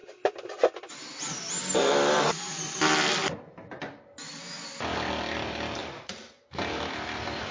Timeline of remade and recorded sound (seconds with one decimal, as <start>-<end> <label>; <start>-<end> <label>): 0.0-1.6 recorded; 1.6-4.3 remade; 4.3-5.8 recorded; 5.8-6.4 remade; 6.4-7.5 recorded